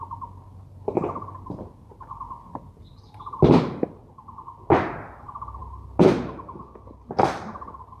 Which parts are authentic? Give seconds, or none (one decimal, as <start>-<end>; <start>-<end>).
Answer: 0.0-8.0